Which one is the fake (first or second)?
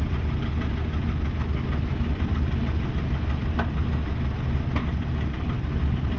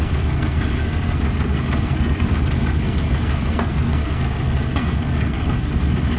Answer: second